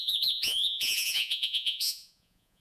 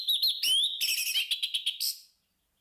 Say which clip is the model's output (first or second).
first